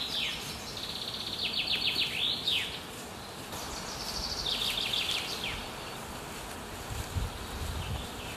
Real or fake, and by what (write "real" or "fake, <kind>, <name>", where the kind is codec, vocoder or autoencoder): real